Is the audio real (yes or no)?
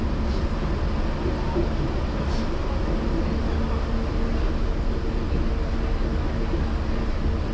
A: yes